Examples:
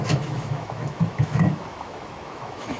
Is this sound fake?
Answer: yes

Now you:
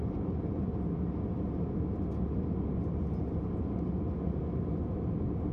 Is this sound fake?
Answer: no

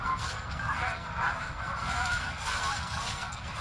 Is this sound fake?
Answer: yes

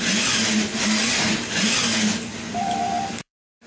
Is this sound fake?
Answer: no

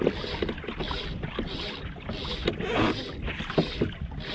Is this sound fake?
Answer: no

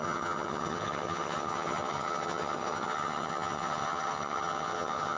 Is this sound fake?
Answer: yes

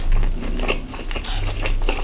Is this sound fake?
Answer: no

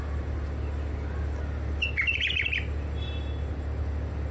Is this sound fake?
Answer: no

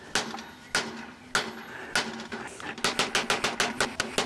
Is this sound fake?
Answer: no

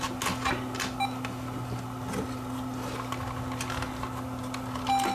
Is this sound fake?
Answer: no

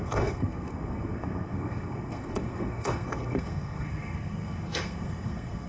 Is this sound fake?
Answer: yes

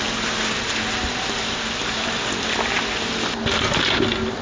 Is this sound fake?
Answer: no